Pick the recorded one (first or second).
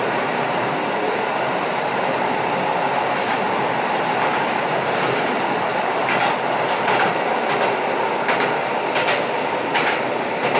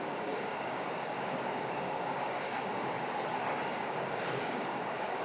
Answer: first